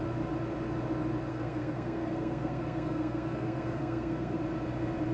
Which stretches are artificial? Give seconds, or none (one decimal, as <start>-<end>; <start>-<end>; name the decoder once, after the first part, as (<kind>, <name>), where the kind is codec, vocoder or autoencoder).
1.3-4.4 (codec, SNAC)